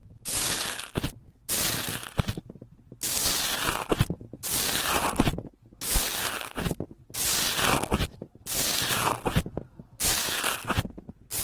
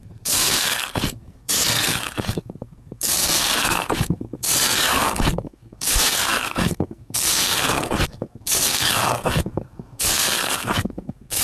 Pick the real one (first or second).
first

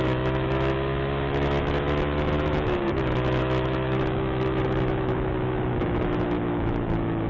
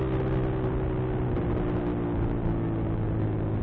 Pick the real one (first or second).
second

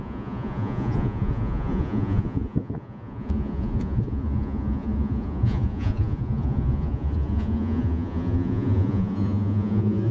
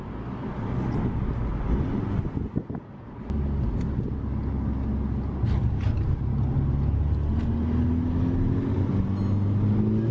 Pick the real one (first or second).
second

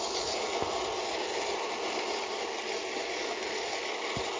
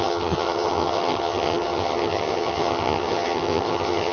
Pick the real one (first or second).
first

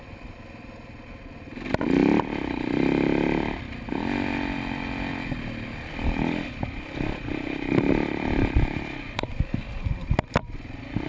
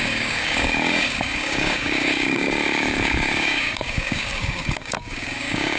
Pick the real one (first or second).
first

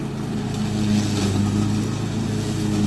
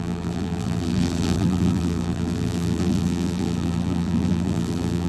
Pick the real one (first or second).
first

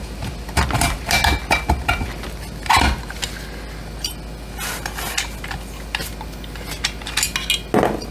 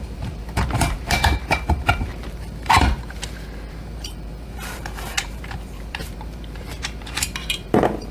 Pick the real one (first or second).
first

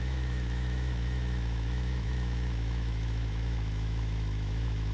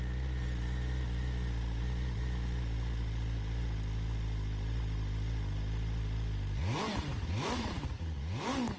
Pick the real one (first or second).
second